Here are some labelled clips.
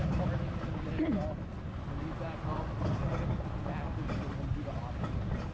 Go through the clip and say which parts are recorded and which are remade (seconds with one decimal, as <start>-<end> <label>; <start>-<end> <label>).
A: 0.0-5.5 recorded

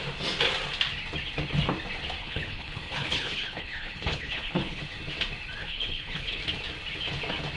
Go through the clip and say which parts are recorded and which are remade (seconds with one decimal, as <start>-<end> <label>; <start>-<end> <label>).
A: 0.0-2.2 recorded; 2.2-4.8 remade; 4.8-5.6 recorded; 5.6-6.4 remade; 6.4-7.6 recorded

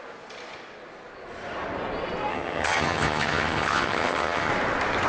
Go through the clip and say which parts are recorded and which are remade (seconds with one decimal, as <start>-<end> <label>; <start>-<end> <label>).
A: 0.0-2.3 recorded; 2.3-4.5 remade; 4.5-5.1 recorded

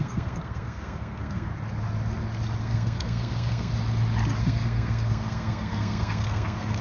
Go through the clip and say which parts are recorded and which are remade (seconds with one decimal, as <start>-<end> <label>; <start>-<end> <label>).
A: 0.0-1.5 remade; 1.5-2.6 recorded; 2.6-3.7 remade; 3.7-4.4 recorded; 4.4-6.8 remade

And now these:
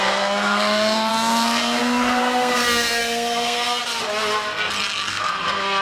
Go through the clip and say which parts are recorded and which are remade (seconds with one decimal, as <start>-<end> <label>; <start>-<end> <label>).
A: 0.0-3.8 remade; 3.8-5.1 recorded; 5.1-5.8 remade

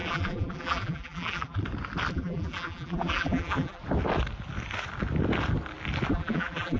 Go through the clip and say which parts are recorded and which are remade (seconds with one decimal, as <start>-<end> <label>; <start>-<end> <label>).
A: 0.0-1.6 remade; 1.6-2.1 recorded; 2.1-3.8 remade; 3.8-6.1 recorded; 6.1-6.8 remade

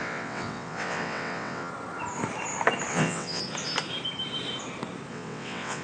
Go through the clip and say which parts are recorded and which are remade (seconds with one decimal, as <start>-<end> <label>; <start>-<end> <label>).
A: 0.0-1.7 remade; 1.7-2.9 recorded; 2.9-3.4 remade; 3.4-5.1 recorded; 5.1-5.8 remade